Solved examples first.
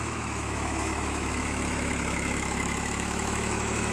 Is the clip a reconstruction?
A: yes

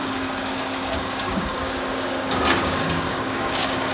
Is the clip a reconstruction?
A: yes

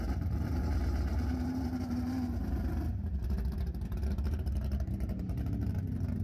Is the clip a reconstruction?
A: yes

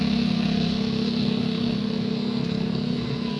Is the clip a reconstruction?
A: yes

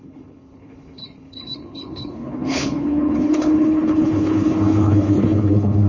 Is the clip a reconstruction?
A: yes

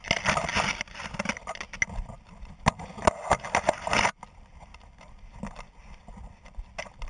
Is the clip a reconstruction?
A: no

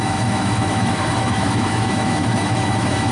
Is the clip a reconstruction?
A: yes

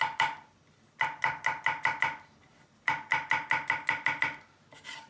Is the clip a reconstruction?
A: no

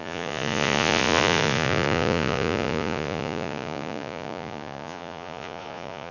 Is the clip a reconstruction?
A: yes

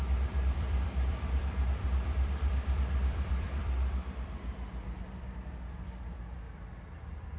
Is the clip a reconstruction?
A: yes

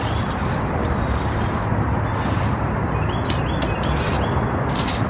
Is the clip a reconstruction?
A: no